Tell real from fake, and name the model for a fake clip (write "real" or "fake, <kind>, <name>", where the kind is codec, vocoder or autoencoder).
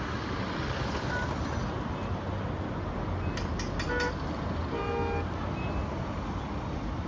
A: real